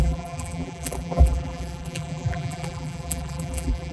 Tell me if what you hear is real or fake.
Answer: fake